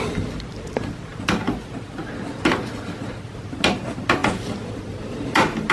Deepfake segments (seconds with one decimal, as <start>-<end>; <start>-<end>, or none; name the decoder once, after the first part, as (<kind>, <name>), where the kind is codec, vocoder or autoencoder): none